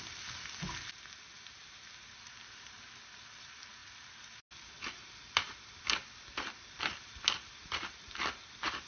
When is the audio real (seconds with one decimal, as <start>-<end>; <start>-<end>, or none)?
0.0-8.9